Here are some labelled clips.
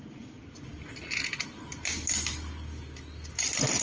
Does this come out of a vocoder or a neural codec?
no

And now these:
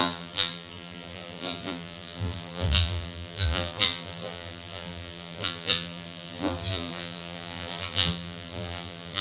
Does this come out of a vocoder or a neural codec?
yes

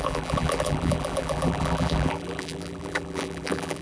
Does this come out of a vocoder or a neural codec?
yes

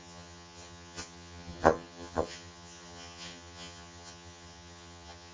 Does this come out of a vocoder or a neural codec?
yes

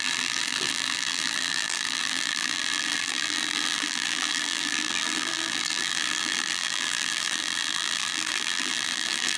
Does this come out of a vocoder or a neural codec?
yes